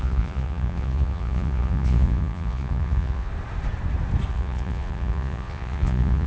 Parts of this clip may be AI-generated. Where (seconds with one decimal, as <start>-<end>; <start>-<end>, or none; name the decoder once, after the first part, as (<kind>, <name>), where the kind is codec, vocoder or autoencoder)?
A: 0.0-3.3 (vocoder, Vocos); 4.3-6.3

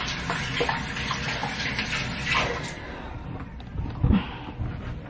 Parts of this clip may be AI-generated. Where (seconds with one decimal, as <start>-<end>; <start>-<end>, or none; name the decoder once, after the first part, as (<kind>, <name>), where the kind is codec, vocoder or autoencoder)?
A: none

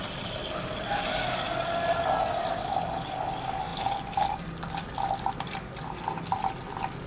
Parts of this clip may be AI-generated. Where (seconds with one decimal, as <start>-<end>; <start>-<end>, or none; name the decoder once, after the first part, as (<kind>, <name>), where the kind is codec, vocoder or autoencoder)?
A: none

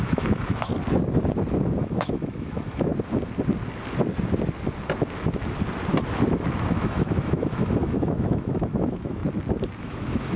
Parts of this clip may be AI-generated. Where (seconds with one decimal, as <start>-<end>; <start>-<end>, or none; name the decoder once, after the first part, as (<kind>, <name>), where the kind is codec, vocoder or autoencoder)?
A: 0.0-0.7 (autoencoder, DAC-VAE); 1.8-2.9; 6.7-9.2; 9.8-10.4

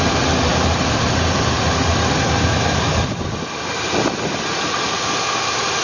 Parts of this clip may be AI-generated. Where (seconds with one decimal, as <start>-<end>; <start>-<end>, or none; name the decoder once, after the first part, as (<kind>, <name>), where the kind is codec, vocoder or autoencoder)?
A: none

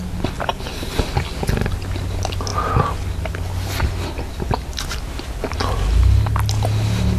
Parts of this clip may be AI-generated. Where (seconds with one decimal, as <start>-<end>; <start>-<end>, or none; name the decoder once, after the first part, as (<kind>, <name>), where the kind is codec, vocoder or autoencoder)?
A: 0.5-1.0 (vocoder, BigVGAN v2)

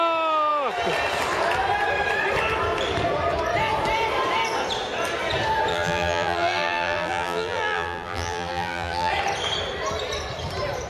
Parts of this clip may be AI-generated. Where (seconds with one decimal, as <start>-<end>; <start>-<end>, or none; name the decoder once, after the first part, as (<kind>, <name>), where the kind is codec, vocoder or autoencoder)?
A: 5.7-9.1 (vocoder, BigVGAN v2)